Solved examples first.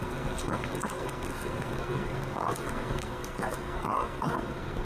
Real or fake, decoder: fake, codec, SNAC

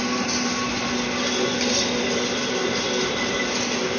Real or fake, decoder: real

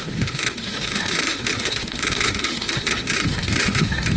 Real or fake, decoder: fake, autoencoder, DAC-VAE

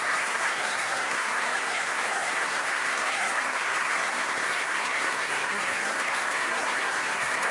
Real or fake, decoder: fake, codec, SNAC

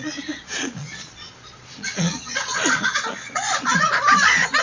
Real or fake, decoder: fake, vocoder, Vocos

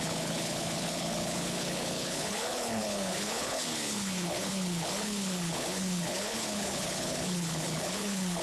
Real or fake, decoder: fake, codec, HILCodec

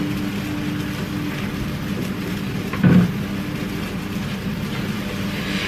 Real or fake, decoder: real